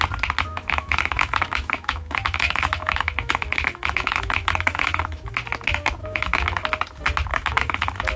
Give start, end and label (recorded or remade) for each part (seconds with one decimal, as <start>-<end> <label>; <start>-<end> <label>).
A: 0.0-0.5 recorded; 0.5-5.3 remade; 5.3-6.0 recorded; 6.0-6.6 remade; 6.6-7.3 recorded; 7.3-8.2 remade